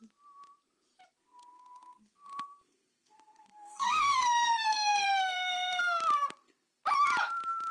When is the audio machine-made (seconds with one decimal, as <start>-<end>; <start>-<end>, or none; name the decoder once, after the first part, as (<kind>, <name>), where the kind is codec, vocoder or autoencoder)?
1.2-5.8 (codec, SNAC)